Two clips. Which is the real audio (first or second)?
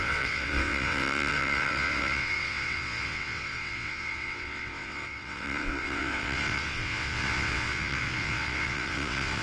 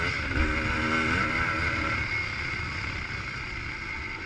second